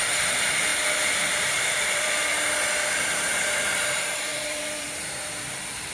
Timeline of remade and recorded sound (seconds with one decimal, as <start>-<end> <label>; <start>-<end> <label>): 0.0-2.3 remade; 2.3-2.9 recorded; 2.9-5.9 remade